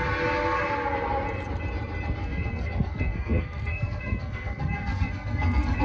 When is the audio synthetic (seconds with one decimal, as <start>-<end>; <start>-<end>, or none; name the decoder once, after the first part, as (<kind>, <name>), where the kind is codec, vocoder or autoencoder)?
2.2-5.8 (codec, SNAC)